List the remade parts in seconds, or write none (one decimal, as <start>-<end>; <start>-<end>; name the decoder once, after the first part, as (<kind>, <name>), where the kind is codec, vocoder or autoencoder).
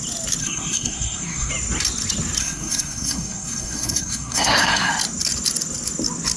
0.4-1.5 (codec, SNAC); 2.4-4.9